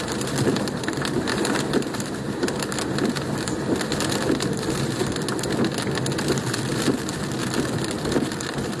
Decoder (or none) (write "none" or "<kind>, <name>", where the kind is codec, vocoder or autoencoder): none